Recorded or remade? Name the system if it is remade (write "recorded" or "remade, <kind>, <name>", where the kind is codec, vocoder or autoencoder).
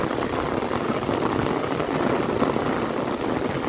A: recorded